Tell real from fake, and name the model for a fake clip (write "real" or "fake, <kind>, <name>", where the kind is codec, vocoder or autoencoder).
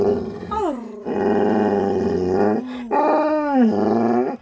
real